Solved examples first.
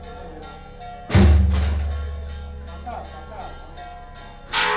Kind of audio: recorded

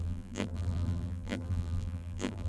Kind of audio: remade